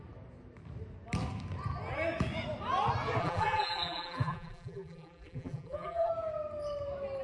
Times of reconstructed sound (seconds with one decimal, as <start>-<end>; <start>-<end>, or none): 3.2-6.1